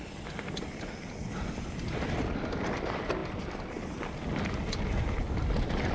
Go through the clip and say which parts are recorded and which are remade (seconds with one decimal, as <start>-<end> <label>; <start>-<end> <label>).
0.0-1.2 remade; 1.2-2.2 recorded; 2.2-3.2 remade; 3.2-5.9 recorded